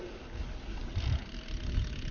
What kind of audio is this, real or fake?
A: real